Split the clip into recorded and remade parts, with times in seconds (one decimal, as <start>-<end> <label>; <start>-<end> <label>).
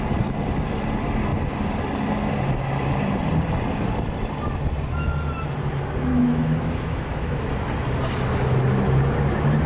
0.0-6.1 recorded; 6.1-7.4 remade; 7.4-9.7 recorded